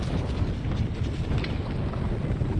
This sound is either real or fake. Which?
real